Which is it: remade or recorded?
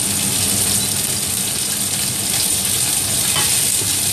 recorded